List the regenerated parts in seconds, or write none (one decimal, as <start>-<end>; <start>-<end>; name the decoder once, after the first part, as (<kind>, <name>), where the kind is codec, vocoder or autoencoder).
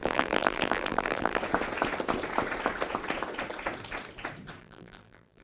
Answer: 0.0-1.4 (vocoder, BigVGAN v2); 4.6-5.4